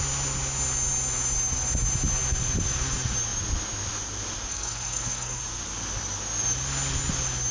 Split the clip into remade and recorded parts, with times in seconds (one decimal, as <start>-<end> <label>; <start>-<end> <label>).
0.0-4.5 recorded; 4.5-5.4 remade; 5.4-7.5 recorded